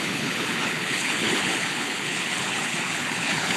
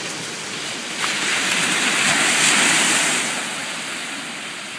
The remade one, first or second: first